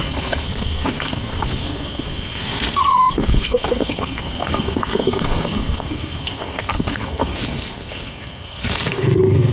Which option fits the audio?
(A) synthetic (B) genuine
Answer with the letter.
A